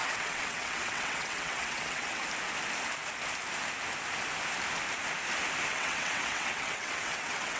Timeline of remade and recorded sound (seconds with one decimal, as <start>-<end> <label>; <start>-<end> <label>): 0.0-2.2 remade; 2.2-5.7 recorded; 5.7-7.6 remade